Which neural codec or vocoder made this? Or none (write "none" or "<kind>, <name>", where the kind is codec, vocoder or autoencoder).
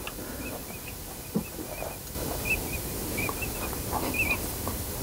none